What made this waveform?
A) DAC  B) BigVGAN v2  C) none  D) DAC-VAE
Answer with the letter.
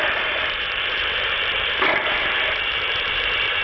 B